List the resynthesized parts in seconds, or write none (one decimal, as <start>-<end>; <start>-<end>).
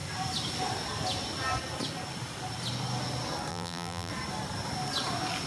3.5-4.1